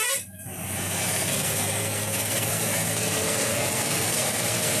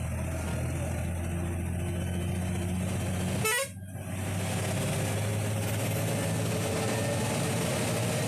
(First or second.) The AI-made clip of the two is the first